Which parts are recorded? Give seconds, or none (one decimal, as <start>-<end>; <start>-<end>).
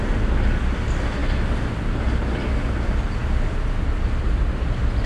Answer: 0.0-3.2; 4.0-5.1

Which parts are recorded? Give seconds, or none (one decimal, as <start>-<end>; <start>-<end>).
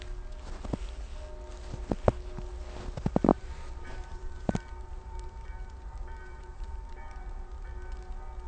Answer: 0.0-3.3; 7.3-8.5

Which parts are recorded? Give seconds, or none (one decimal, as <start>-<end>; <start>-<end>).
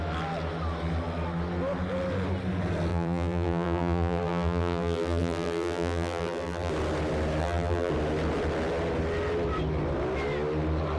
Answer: 0.0-2.9; 6.7-7.4; 7.9-11.0